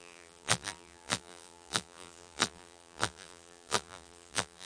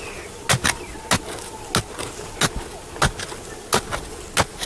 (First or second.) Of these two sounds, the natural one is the second